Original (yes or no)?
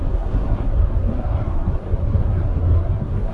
no